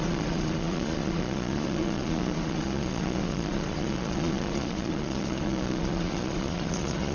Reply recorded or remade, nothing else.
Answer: remade